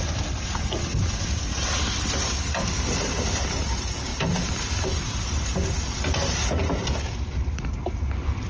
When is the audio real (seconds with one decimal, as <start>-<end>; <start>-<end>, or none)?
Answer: 0.0-8.5